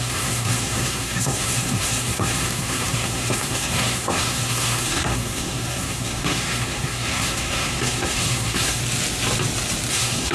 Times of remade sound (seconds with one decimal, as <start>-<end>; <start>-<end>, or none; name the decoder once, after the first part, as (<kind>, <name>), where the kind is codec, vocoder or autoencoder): 0.0-8.8 (codec, SNAC); 9.9-10.3